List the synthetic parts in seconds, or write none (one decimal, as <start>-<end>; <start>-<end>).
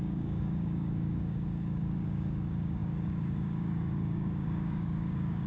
0.0-5.5